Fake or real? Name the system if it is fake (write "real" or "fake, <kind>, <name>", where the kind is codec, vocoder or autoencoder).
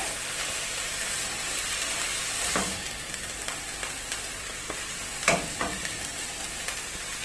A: real